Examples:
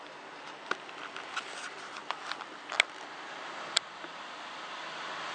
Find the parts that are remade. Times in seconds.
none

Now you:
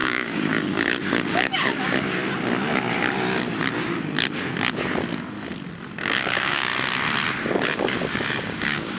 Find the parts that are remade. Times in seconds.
0.0-2.2 (codec, DAC); 5.9-6.7; 7.5-9.0